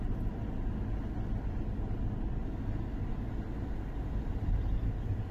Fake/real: real